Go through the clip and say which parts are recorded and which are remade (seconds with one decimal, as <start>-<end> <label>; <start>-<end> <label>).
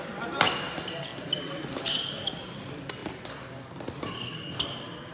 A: 0.0-5.1 remade